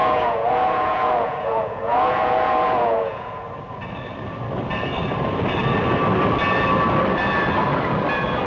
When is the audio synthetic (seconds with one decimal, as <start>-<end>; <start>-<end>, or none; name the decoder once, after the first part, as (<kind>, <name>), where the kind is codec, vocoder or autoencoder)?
0.0-3.4 (vocoder, Vocos)